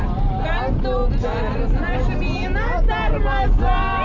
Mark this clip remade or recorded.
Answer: recorded